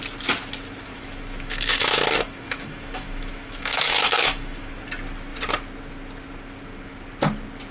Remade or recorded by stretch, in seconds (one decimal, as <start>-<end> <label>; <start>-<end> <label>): 0.0-0.9 recorded; 0.9-4.7 remade; 4.7-7.7 recorded